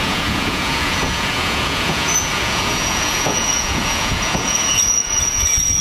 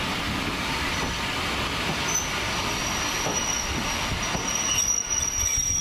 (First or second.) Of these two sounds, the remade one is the first